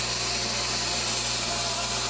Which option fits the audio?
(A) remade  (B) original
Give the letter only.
B